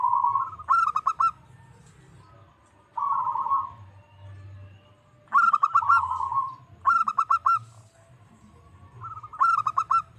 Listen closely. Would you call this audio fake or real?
real